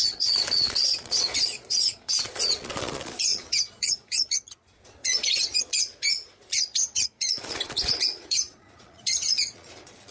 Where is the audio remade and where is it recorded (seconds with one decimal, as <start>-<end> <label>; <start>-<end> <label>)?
0.0-10.1 remade